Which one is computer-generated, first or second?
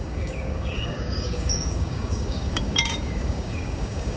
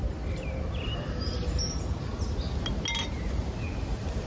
first